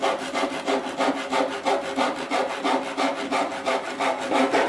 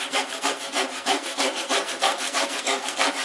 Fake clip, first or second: second